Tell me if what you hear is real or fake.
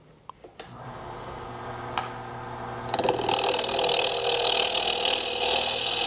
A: real